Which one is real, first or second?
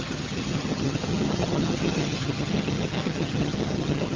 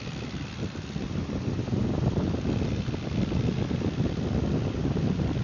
second